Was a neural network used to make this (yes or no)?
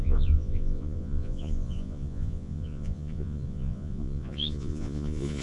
yes